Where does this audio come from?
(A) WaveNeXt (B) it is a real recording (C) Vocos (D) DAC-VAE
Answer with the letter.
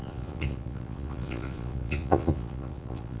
C